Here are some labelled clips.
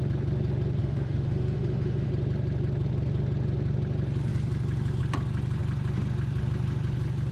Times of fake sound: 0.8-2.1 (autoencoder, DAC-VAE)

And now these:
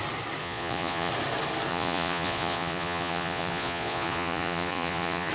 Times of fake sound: 0.4-1.1 (vocoder, Vocos); 1.7-5.3

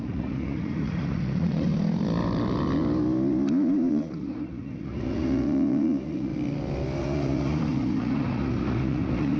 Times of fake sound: 0.0-1.7 (vocoder, Vocos); 3.9-6.3; 7.0-9.4

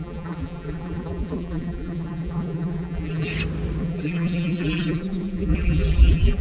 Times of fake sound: 0.0-3.3 (vocoder, BigVGAN v2); 3.8-6.4

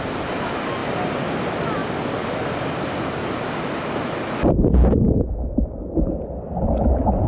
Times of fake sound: 4.8-6.0 (codec, DAC)

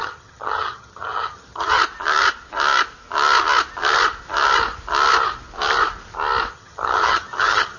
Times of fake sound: 0.0-1.8 (vocoder, HiFi-GAN); 6.5-7.8